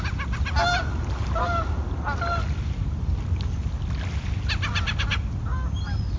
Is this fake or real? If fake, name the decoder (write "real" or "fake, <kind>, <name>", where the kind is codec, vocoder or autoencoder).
real